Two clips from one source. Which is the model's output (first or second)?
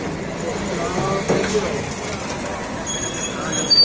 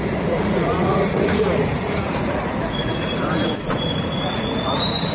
second